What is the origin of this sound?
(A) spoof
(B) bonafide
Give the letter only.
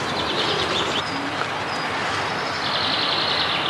B